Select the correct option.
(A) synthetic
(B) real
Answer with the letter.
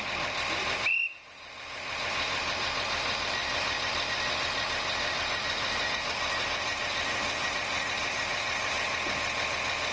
B